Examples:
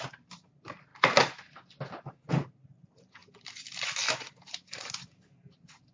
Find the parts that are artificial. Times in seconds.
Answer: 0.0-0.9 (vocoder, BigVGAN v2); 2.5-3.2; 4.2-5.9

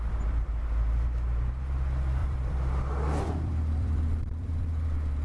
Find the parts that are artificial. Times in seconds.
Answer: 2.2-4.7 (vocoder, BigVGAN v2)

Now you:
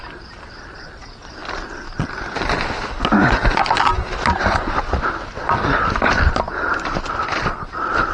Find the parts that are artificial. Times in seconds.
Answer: 0.0-1.4 (vocoder, BigVGAN v2); 6.1-8.1

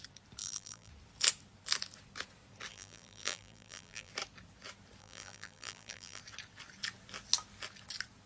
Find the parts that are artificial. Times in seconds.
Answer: 0.4-0.9 (vocoder, BigVGAN v2); 2.7-4.1; 5.0-6.2